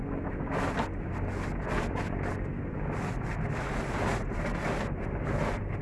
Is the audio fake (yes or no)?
no